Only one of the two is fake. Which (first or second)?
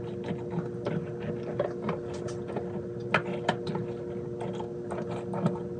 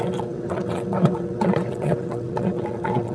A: second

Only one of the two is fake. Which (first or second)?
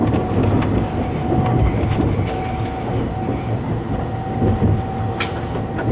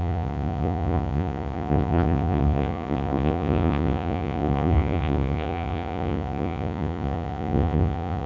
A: second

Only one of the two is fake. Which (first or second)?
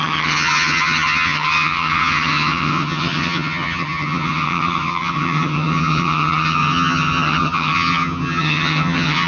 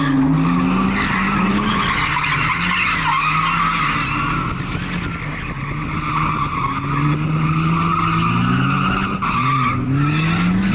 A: first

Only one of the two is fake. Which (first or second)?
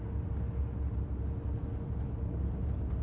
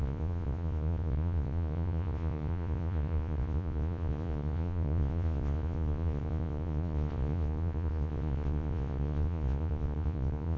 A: second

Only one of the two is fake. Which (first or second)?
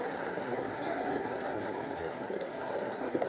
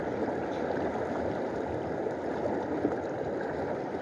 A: first